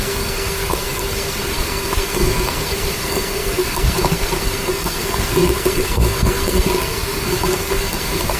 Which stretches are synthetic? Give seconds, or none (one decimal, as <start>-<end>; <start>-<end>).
0.0-8.4